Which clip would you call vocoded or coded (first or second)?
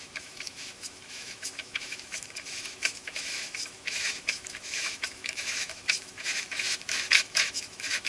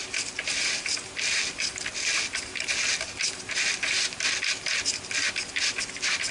first